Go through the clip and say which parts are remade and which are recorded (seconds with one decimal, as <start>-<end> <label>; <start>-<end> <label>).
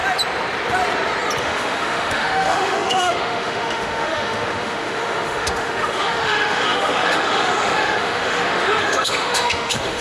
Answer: 0.0-1.4 recorded; 1.4-10.0 remade